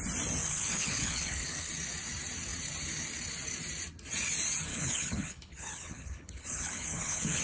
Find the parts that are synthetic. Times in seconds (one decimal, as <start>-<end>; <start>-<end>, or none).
0.4-1.7; 4.7-7.4